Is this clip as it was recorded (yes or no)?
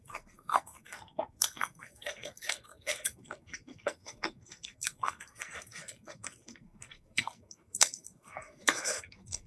no